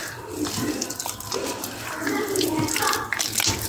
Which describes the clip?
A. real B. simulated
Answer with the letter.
B